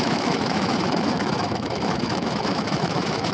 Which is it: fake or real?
fake